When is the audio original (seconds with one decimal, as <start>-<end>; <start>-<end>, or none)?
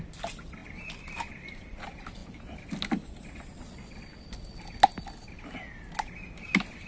0.0-6.9